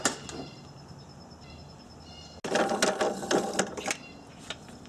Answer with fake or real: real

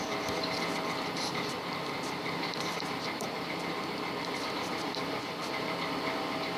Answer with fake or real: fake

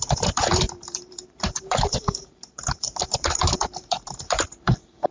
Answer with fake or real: fake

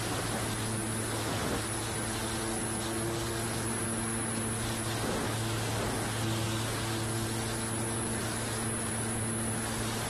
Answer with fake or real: real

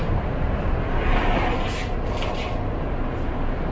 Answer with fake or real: real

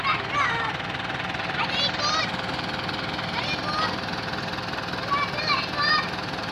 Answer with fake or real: real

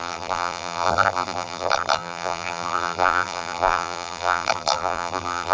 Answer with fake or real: fake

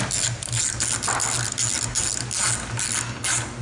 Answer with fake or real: real